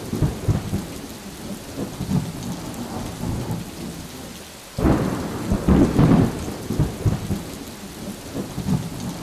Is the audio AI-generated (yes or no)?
no